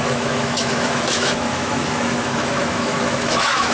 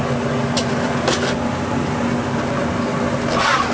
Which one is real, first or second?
second